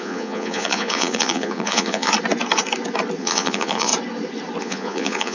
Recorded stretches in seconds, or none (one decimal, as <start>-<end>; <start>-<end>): 2.1-3.2; 3.9-4.6